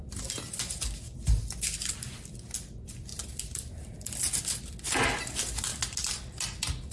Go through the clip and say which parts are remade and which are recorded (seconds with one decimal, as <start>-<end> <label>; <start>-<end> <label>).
0.0-6.9 recorded